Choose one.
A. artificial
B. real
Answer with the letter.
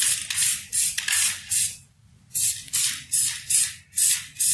B